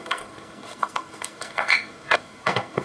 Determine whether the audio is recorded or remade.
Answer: remade